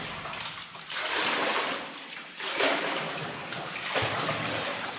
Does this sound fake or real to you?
real